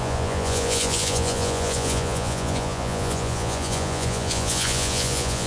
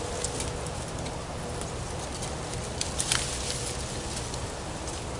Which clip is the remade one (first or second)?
first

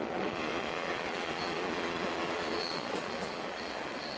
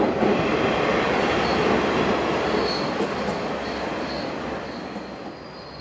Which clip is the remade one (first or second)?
first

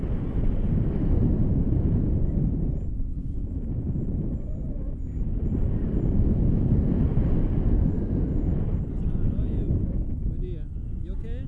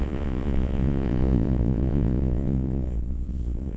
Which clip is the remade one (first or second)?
second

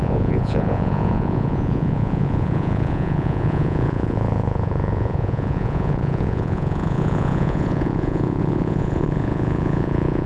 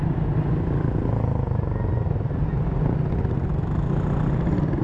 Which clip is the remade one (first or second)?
first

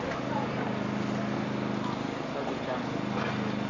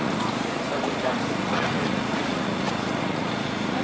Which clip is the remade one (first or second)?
second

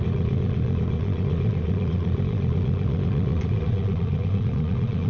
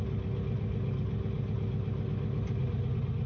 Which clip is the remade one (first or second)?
first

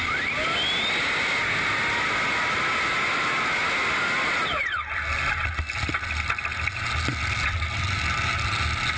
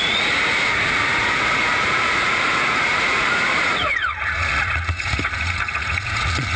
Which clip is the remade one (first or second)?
second